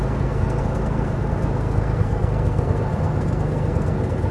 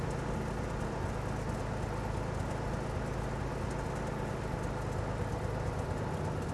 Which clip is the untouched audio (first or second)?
second